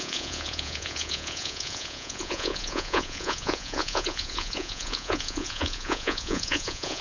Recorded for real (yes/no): no